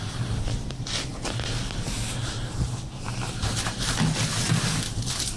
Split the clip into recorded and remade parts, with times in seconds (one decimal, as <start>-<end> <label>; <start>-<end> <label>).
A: 0.0-1.1 remade; 1.1-4.3 recorded; 4.3-5.4 remade